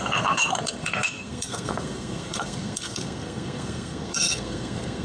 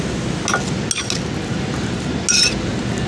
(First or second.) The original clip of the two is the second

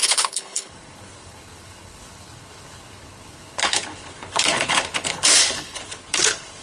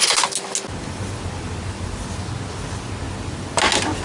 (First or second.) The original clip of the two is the second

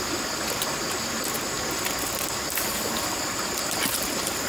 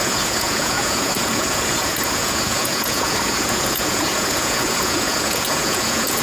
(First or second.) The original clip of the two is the first